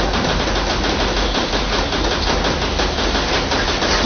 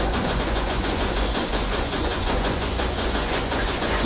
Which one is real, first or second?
first